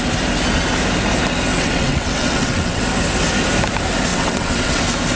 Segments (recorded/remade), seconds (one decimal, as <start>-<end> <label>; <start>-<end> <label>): 0.0-1.5 recorded; 1.5-2.8 remade; 2.8-4.1 recorded; 4.1-4.8 remade; 4.8-5.2 recorded